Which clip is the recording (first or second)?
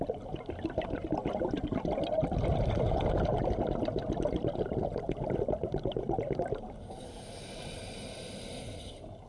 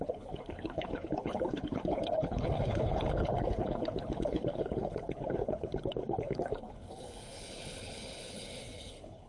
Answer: first